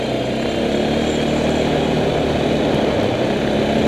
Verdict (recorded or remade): recorded